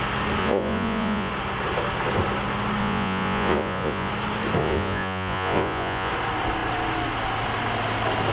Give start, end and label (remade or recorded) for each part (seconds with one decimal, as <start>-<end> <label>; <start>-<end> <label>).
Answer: 0.0-0.4 recorded; 0.4-1.3 remade; 1.3-2.8 recorded; 2.8-4.1 remade; 4.1-4.6 recorded; 4.6-6.1 remade; 6.1-8.3 recorded